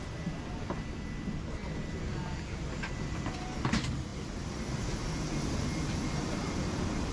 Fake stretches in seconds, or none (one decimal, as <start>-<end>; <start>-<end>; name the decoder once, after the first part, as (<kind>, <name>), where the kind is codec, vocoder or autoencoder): 4.1-4.8 (vocoder, BigVGAN v2)